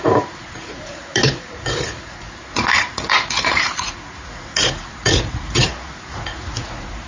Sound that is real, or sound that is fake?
fake